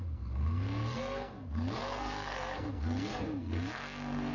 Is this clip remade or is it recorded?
remade